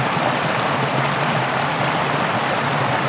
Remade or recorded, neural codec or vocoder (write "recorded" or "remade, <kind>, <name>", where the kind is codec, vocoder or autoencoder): recorded